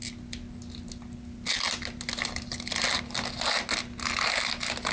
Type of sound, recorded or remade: recorded